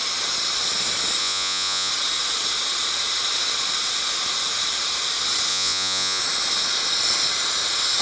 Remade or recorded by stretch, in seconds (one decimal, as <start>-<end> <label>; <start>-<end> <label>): 0.0-1.2 recorded; 1.2-1.9 remade; 1.9-5.5 recorded; 5.5-6.2 remade; 6.2-8.0 recorded